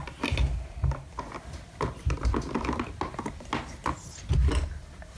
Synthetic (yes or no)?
no